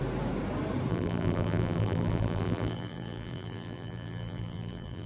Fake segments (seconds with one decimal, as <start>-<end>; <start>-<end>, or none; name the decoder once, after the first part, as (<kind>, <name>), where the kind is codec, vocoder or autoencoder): 0.9-5.1 (vocoder, BigVGAN v2)